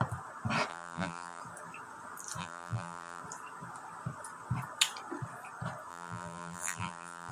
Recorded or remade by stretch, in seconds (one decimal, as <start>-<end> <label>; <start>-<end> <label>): 0.0-0.7 recorded; 0.7-1.4 remade; 1.4-2.4 recorded; 2.4-3.2 remade; 3.2-5.9 recorded; 5.9-7.3 remade